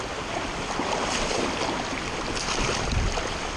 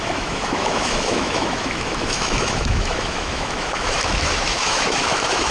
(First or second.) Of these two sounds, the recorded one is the first